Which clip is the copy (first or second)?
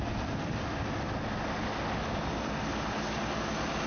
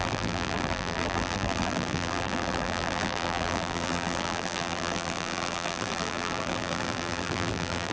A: second